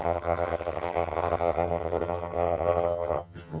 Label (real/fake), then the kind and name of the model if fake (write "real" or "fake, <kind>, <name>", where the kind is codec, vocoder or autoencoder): fake, vocoder, HiFi-GAN